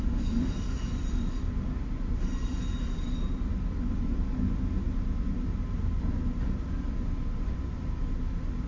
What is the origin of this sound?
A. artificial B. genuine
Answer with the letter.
B